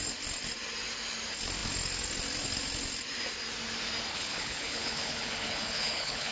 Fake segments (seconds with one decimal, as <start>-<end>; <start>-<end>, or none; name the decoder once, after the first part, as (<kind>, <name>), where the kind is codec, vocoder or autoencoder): 4.1-6.3 (codec, HILCodec)